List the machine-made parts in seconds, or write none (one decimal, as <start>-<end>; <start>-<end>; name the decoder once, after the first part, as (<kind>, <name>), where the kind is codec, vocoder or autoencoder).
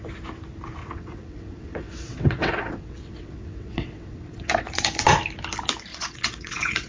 0.8-4.6 (vocoder, WaveNeXt); 5.9-6.9